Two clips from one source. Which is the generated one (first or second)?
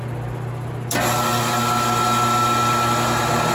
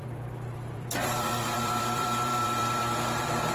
second